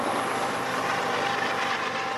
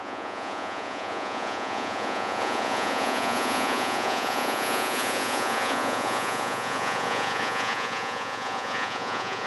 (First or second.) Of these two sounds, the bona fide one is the first